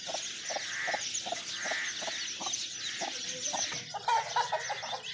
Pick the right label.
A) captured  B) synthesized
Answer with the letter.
A